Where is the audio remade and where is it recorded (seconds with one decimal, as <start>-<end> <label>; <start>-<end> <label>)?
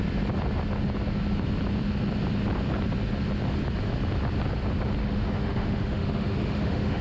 0.0-5.0 recorded; 5.0-7.0 remade